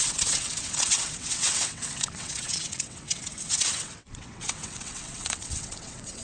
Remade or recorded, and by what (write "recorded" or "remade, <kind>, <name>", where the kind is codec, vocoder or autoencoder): remade, vocoder, WaveNeXt